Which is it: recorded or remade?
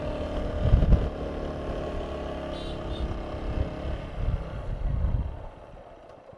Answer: recorded